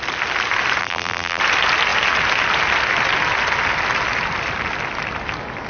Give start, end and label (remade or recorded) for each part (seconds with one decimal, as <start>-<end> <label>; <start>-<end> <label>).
0.0-0.8 recorded; 0.8-1.4 remade; 1.4-5.7 recorded